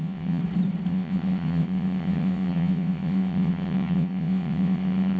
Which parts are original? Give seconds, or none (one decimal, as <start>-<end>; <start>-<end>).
0.4-0.9